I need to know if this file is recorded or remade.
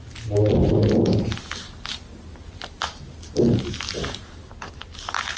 recorded